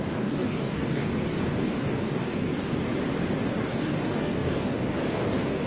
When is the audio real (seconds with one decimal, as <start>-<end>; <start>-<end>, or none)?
2.9-3.6